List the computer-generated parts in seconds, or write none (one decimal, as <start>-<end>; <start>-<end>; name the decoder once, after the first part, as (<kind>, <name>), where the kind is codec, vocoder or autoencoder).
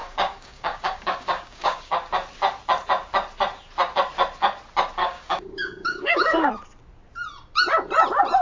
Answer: 0.0-1.9 (codec, DAC); 5.0-6.5